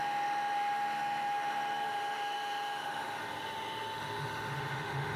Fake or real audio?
fake